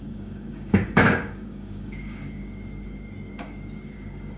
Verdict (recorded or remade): remade